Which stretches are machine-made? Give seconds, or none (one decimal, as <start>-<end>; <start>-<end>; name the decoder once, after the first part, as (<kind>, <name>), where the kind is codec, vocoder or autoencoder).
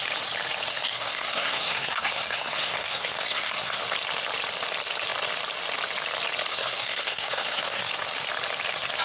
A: 0.7-3.8 (codec, SNAC); 6.5-7.9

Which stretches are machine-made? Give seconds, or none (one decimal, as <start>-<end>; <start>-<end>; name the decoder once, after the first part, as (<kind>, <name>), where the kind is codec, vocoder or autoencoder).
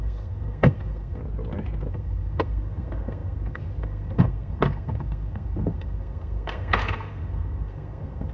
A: 0.0-1.2 (codec, SNAC); 1.9-8.3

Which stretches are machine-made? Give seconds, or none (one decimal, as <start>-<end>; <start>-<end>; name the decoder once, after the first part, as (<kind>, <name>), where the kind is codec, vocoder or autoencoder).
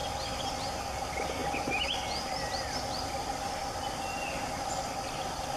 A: none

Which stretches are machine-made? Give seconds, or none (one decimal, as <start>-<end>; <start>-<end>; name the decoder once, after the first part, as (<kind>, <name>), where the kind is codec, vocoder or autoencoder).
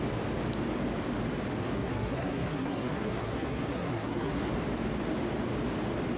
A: 1.6-4.5 (codec, SNAC)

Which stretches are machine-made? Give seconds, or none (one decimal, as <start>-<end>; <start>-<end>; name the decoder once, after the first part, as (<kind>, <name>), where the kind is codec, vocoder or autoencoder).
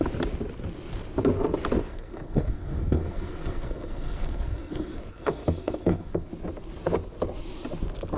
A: 1.9-6.3 (codec, SNAC)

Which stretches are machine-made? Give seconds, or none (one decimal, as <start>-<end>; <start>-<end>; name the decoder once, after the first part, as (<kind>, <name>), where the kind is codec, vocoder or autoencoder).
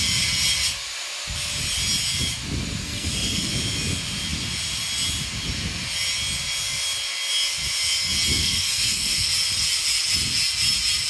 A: 2.8-3.5 (codec, SNAC); 8.3-9.3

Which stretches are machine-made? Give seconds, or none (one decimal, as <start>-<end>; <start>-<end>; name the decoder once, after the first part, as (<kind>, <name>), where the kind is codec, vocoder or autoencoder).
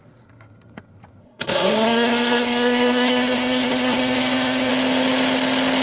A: 1.2-4.7 (codec, SNAC)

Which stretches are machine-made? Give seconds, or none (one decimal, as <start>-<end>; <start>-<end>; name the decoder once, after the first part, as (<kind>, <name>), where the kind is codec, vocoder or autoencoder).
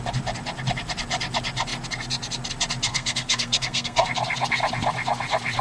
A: 2.9-4.1 (codec, SNAC)